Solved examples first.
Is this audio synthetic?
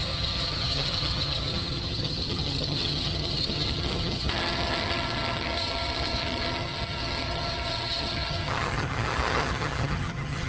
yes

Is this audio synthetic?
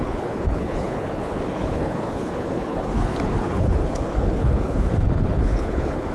yes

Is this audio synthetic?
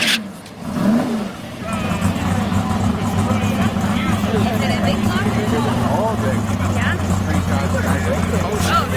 no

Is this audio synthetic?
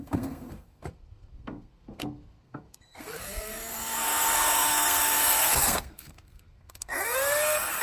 yes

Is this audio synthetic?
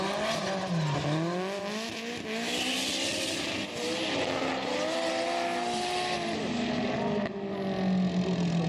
no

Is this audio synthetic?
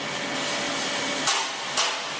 no